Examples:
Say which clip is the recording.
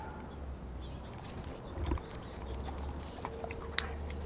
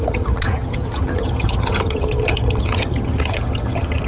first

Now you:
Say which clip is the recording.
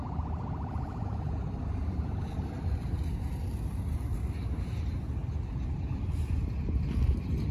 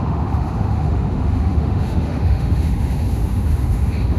first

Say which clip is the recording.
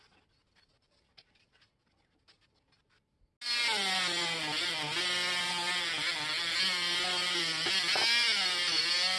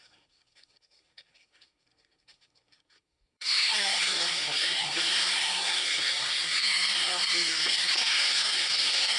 first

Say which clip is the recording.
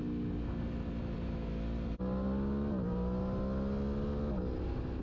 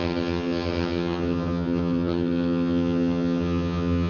first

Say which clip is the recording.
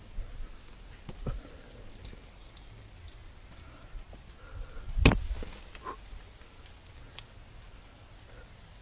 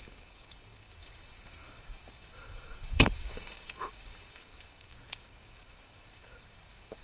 first